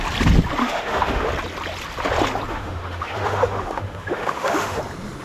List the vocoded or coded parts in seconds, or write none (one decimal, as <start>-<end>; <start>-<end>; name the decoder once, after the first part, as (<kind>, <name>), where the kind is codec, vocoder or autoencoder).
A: 0.6-1.3 (autoencoder, DAC-VAE); 2.5-4.8